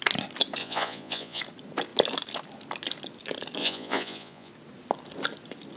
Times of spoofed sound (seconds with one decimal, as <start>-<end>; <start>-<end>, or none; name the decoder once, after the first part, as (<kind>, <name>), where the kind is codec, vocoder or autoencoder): 0.6-1.4 (vocoder, Vocos); 3.6-4.5